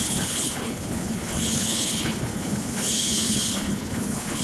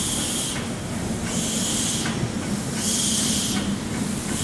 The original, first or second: second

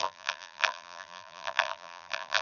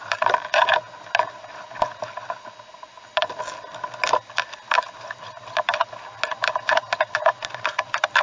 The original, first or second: second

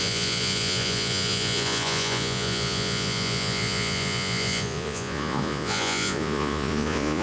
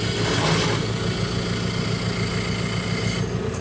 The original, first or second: second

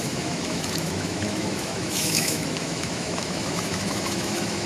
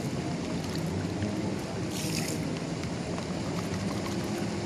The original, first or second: second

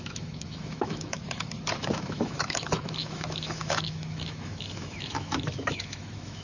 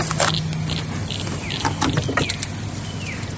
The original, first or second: second